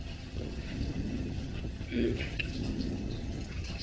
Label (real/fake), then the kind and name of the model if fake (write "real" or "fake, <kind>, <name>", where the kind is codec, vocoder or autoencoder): fake, vocoder, HiFi-GAN